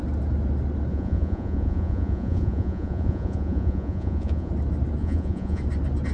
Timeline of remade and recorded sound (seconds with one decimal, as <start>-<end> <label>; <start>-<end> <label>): 0.0-0.9 recorded; 0.9-4.5 remade; 4.5-5.0 recorded; 5.0-5.6 remade; 5.6-6.1 recorded